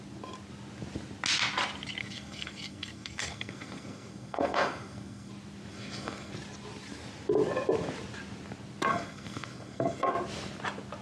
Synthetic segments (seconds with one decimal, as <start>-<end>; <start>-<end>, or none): 2.0-5.3; 5.7-6.3; 8.9-10.1